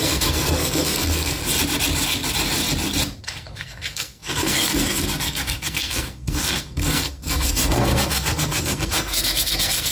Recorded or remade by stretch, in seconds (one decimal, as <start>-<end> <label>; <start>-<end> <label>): 0.0-1.4 remade; 1.4-3.2 recorded; 3.2-9.9 remade